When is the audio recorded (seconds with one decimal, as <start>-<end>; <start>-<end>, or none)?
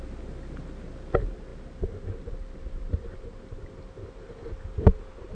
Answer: 0.0-5.3